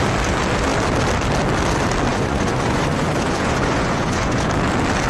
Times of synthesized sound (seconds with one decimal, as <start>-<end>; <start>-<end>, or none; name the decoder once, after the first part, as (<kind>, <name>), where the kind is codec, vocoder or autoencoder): 2.1-4.5 (vocoder, Vocos)